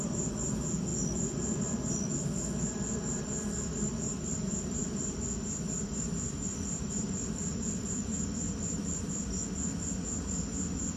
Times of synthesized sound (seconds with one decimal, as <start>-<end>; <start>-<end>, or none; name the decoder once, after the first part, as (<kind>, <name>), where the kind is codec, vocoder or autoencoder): 4.8-9.4 (vocoder, BigVGAN v2)